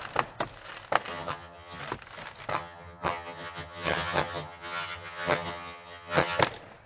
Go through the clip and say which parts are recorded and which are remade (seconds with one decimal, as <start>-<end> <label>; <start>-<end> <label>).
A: 0.0-1.1 recorded; 1.1-1.8 remade; 1.8-2.5 recorded; 2.5-6.4 remade; 6.4-6.9 recorded